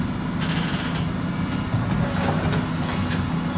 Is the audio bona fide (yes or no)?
yes